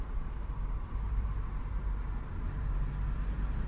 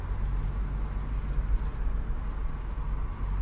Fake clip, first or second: first